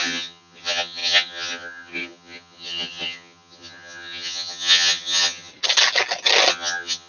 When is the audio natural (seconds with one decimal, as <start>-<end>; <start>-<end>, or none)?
5.5-6.5